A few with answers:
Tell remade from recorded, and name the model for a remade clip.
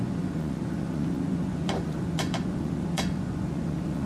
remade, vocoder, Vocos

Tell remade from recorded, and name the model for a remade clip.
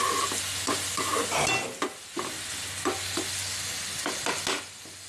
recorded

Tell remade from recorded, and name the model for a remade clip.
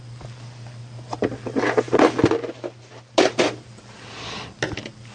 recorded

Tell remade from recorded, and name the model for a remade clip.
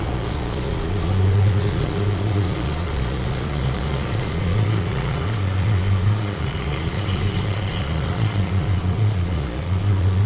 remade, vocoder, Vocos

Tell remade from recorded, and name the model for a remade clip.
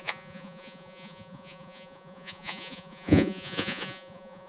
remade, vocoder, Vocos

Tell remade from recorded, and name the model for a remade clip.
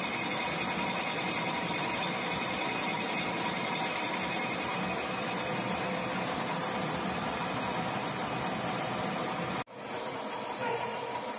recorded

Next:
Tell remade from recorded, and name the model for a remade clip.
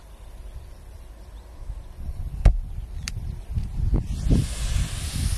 recorded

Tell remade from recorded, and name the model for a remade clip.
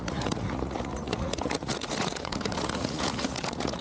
remade, vocoder, Vocos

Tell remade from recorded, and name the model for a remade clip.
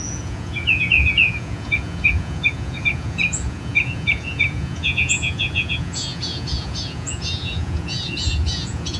remade, vocoder, Vocos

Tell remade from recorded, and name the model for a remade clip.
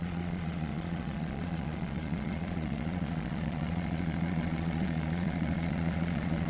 remade, vocoder, Vocos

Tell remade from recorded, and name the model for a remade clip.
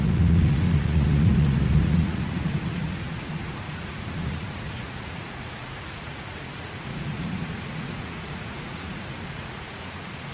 remade, vocoder, Vocos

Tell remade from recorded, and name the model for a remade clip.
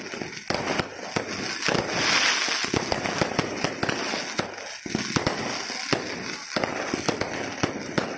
recorded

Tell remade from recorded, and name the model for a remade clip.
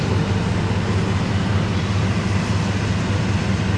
recorded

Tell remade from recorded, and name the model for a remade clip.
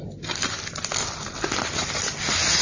recorded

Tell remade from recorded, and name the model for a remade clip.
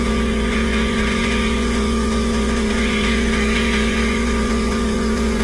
remade, vocoder, Vocos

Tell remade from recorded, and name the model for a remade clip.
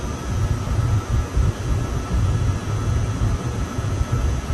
recorded